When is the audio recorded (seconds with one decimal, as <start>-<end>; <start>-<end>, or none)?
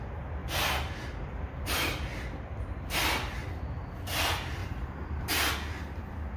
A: 0.0-0.4; 1.5-4.6; 5.5-6.4